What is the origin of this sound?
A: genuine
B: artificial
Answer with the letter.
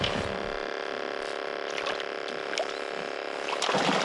A